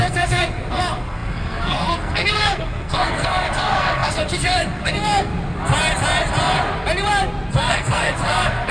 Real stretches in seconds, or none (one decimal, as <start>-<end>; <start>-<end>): 5.3-7.5